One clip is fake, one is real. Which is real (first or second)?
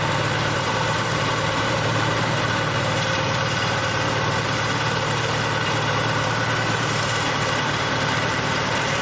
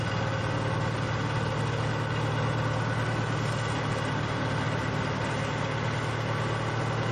second